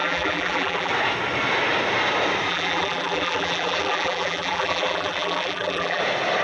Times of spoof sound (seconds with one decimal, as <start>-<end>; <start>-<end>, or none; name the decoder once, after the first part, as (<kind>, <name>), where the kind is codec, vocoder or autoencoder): 0.0-0.9 (vocoder, BigVGAN v2); 2.5-6.0